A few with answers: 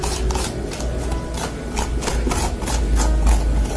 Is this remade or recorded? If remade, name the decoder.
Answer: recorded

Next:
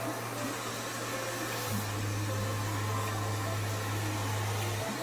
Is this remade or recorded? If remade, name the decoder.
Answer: recorded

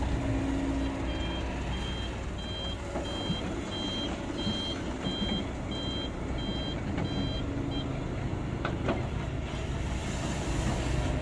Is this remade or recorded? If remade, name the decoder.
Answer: recorded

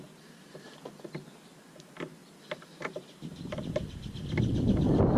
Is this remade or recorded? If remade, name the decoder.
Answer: recorded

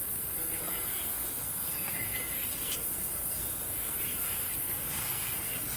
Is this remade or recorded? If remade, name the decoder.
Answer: remade, codec, SNAC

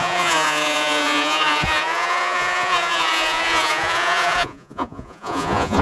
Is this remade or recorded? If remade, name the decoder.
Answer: remade, vocoder, Vocos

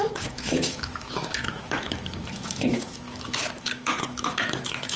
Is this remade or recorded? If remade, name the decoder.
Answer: remade, autoencoder, DAC-VAE